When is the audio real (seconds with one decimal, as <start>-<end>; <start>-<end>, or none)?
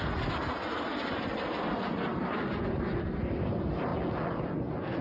0.0-0.9; 1.6-5.0